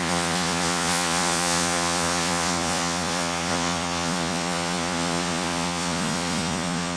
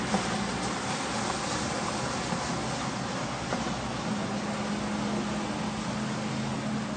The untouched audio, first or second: second